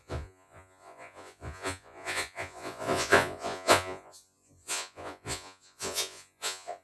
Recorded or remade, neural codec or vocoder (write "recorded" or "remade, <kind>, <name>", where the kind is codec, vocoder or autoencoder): remade, vocoder, Vocos